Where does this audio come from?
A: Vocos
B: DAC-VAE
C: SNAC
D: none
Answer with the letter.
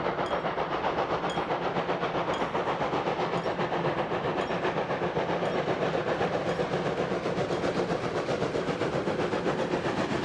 D